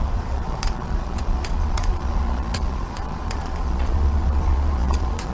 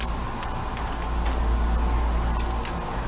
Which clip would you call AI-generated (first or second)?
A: first